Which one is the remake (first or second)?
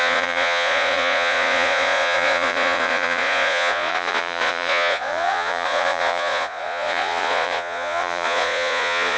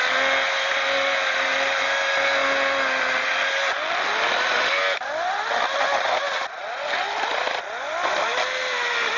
first